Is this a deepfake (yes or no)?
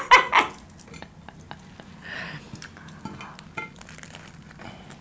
no